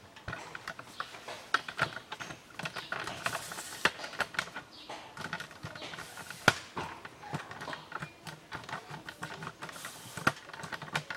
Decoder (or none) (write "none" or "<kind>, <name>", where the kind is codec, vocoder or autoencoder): none